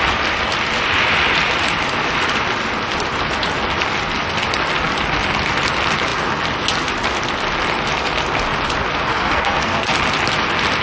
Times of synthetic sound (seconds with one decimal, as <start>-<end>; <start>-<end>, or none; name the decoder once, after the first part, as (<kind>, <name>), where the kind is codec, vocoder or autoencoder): 9.1-9.9 (codec, SNAC)